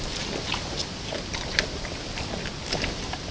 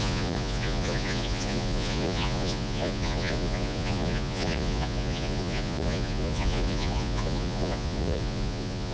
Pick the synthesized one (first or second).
second